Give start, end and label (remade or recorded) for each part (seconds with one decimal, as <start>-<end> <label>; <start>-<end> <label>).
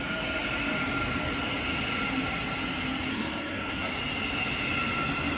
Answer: 0.0-3.1 recorded; 3.1-3.9 remade; 3.9-5.4 recorded